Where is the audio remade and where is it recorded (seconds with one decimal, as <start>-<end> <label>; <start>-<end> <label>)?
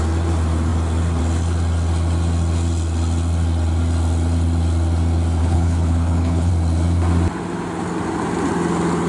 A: 0.0-5.4 recorded; 5.4-6.5 remade; 6.5-9.1 recorded